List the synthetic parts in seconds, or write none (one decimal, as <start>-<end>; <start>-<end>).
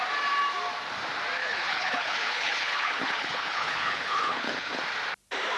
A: 1.4-4.8